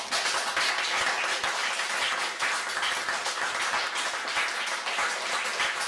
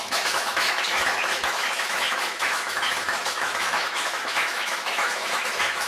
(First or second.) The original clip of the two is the first